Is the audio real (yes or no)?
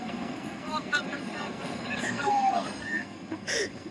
no